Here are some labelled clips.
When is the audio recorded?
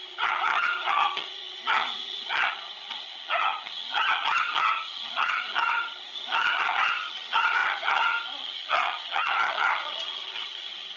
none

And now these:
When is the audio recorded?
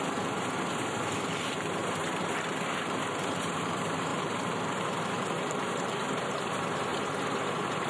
none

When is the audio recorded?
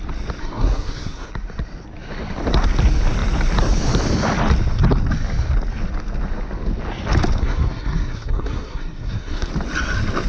0.0-0.4; 1.3-7.4; 9.5-10.3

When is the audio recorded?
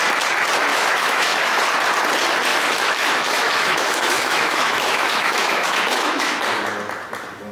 0.0-0.7; 1.6-2.5; 6.4-7.5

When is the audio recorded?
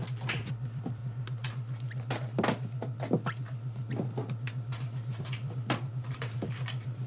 1.0-5.2